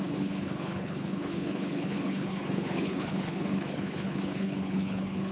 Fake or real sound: fake